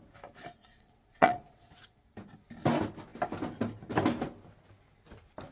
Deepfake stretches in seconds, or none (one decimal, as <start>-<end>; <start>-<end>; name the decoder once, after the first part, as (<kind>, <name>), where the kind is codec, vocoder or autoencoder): 0.6-2.0 (vocoder, Vocos)